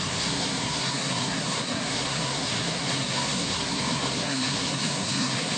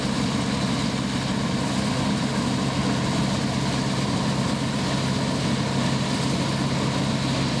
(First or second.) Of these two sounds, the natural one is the second